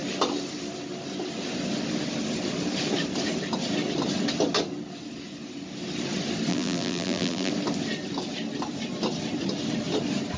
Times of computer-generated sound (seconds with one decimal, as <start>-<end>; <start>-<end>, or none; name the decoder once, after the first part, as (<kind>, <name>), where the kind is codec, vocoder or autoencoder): 6.5-7.5 (vocoder, BigVGAN v2)

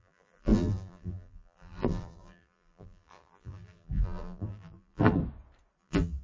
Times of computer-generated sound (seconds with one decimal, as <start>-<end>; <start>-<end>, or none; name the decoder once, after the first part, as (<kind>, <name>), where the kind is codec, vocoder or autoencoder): 0.0-5.2 (vocoder, BigVGAN v2); 5.8-6.2

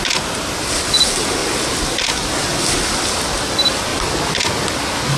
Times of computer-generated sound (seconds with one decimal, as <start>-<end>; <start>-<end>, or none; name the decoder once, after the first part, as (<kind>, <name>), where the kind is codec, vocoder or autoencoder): none

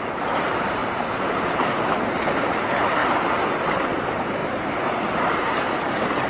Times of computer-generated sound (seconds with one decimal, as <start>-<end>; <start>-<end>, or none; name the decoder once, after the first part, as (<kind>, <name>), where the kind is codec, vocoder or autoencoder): 0.0-3.0 (vocoder, BigVGAN v2); 3.6-6.3

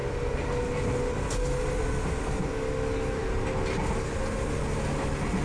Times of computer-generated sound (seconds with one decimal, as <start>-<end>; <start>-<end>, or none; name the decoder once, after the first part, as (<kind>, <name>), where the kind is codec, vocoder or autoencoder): none